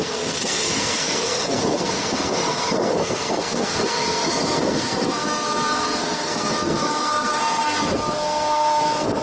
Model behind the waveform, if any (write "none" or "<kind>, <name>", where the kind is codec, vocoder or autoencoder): codec, SNAC